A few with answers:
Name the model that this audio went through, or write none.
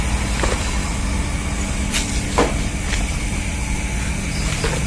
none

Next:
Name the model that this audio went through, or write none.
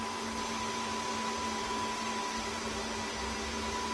none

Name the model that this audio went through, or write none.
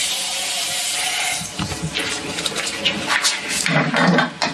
none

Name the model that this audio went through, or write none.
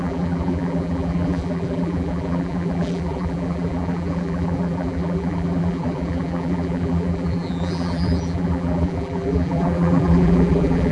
vocoder, BigVGAN v2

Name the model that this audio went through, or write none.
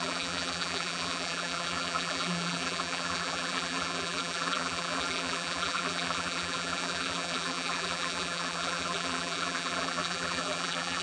vocoder, BigVGAN v2